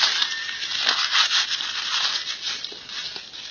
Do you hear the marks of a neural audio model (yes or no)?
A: no